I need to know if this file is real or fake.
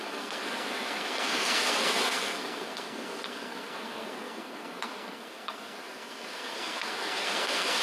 fake